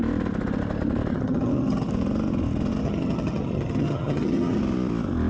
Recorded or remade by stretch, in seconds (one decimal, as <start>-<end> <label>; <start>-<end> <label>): 0.0-1.1 recorded; 1.1-1.9 remade; 1.9-2.8 recorded; 2.8-4.6 remade; 4.6-5.3 recorded